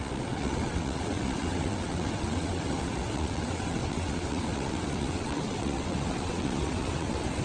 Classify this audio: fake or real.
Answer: fake